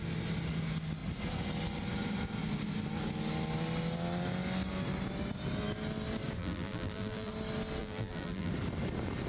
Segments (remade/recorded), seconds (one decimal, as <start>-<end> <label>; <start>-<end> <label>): 0.0-6.4 recorded; 6.4-7.3 remade; 7.3-7.8 recorded; 7.8-8.5 remade; 8.5-9.3 recorded